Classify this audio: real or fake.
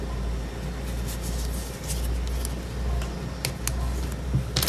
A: real